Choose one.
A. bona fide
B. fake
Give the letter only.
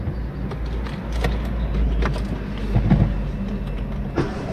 A